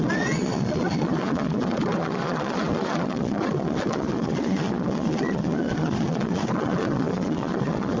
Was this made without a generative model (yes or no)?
no